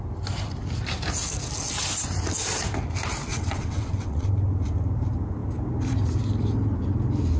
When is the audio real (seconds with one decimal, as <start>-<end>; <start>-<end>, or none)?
0.0-3.3; 4.3-7.4